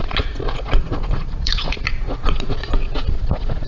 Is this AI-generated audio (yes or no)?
yes